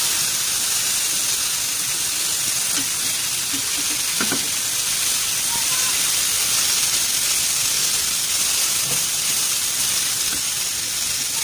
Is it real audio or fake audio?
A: real